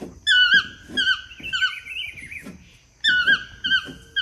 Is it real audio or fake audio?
real